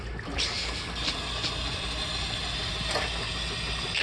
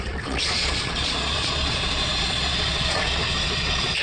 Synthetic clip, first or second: second